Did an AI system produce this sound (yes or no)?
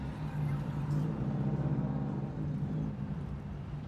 yes